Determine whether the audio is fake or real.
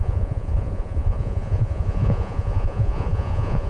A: fake